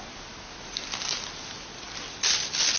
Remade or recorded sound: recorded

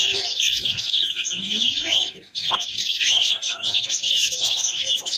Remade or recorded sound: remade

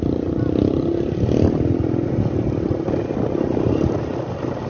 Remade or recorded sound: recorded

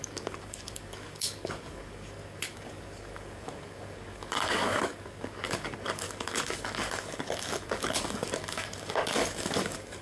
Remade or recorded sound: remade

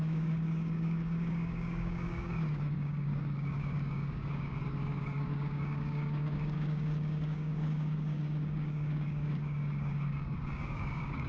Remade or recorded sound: remade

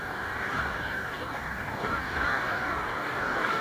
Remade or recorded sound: remade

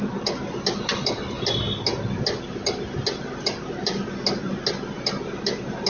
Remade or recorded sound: recorded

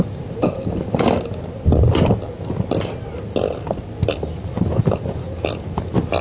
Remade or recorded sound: recorded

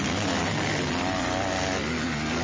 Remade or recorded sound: recorded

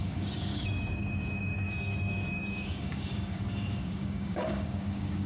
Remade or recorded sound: remade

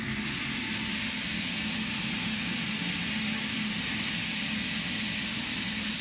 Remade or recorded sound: recorded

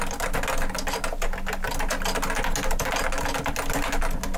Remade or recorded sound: recorded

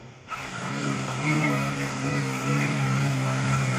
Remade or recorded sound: remade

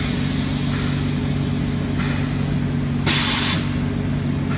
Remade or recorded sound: recorded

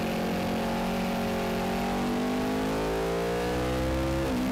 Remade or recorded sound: recorded